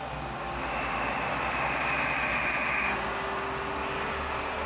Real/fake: real